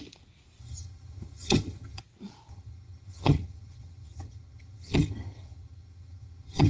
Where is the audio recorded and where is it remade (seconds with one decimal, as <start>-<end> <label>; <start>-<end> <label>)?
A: 0.0-0.6 recorded; 0.6-2.0 remade; 2.0-2.5 recorded; 2.5-6.7 remade